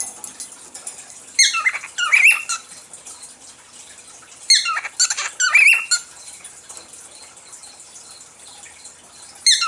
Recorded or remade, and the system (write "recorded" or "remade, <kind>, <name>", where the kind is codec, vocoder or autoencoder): recorded